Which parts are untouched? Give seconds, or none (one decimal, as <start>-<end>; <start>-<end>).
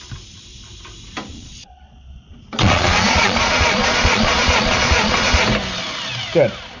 0.0-1.3; 5.4-6.8